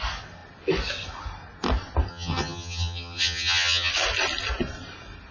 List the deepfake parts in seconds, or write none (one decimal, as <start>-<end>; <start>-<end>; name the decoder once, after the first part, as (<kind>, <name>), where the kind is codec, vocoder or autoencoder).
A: 2.1-3.9 (vocoder, HiFi-GAN)